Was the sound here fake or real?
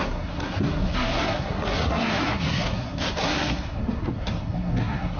fake